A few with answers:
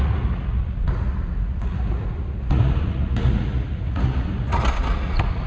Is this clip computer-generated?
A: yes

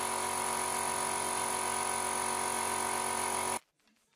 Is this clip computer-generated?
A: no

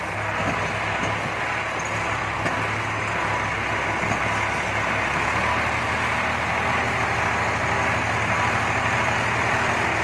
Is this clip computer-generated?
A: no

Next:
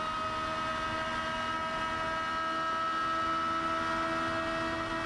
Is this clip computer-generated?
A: no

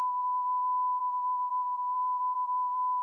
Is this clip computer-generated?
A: yes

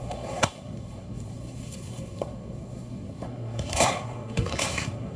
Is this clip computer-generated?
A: yes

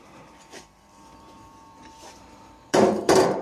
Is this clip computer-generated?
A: yes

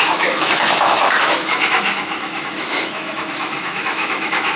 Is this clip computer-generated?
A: yes